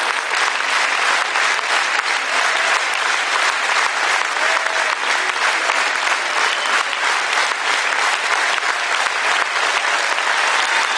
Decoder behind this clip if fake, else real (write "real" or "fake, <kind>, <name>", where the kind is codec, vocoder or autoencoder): real